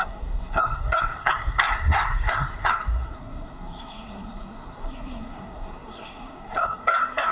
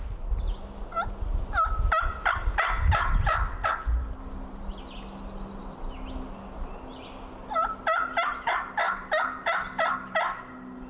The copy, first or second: first